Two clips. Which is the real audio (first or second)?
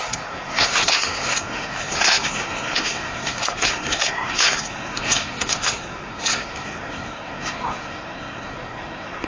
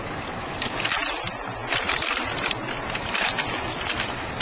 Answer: second